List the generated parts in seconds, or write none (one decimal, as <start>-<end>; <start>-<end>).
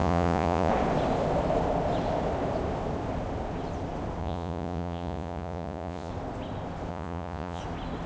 0.0-0.7; 4.2-6.1; 6.9-7.6